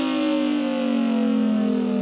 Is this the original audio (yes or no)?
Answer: yes